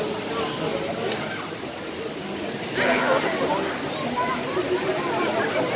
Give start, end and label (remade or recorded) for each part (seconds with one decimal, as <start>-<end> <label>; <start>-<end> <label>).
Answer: 0.0-5.8 recorded